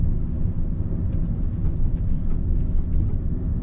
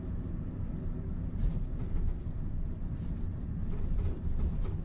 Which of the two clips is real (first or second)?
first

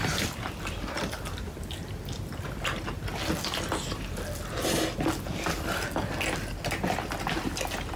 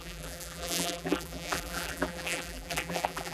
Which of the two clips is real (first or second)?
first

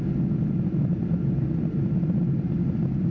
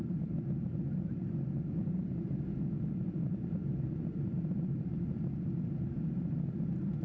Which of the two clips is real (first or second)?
first